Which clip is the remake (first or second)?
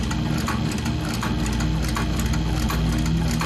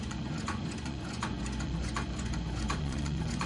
second